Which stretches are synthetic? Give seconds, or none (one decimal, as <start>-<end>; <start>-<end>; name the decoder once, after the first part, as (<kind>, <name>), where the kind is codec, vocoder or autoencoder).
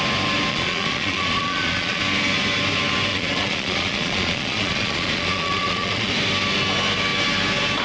0.5-2.0 (vocoder, Vocos); 3.1-6.1